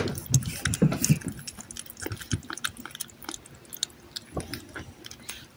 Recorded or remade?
recorded